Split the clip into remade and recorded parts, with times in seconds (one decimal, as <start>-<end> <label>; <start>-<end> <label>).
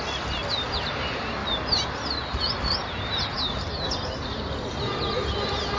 0.0-5.8 recorded